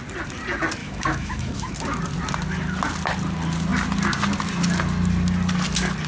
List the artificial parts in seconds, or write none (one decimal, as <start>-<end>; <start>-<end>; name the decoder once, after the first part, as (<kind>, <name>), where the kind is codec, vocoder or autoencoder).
0.8-1.7 (autoencoder, DAC-VAE)